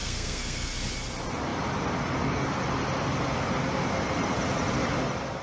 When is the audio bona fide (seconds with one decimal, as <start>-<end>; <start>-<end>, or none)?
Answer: 0.7-5.4